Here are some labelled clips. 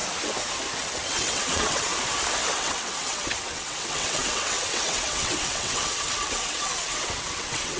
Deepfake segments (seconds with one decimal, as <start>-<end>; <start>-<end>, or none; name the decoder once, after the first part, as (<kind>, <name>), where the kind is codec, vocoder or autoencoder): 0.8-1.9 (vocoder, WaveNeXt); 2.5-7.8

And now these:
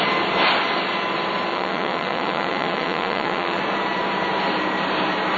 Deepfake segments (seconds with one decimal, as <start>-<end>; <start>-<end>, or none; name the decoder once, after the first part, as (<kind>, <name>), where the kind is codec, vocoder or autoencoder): 1.5-3.6 (vocoder, WaveNeXt)

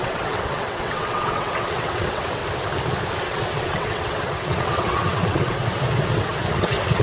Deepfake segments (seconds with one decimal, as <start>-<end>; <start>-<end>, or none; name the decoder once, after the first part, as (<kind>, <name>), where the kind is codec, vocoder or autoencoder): 0.0-2.4 (vocoder, WaveNeXt); 3.2-7.0

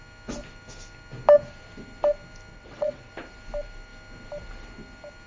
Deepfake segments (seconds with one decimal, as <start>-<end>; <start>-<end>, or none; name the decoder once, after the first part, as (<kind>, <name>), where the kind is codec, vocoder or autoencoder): 2.5-3.1 (vocoder, WaveNeXt)